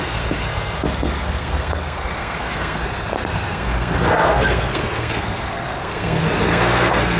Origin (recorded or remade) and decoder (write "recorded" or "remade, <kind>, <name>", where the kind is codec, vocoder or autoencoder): remade, codec, SNAC